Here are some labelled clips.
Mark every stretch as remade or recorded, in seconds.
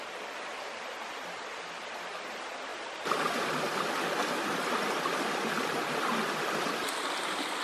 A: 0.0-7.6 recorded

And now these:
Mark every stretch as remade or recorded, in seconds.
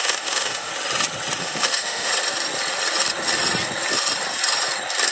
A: 0.0-0.7 remade; 0.7-1.4 recorded; 1.4-2.1 remade; 2.1-5.1 recorded